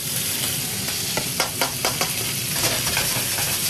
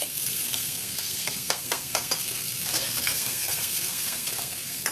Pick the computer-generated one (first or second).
second